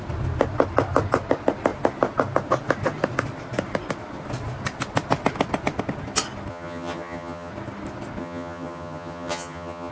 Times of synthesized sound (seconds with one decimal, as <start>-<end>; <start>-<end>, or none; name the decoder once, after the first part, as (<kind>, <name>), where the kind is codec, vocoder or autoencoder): 6.5-7.5 (vocoder, HiFi-GAN); 8.2-9.9